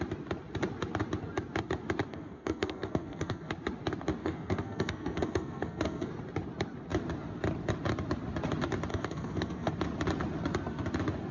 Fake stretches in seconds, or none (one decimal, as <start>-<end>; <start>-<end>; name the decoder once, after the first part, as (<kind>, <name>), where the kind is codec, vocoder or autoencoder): 2.1-3.5 (codec, SNAC); 4.2-6.1; 8.9-9.7